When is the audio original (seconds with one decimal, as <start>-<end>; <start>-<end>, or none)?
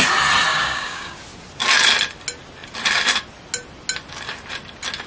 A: 0.0-0.5; 1.2-5.1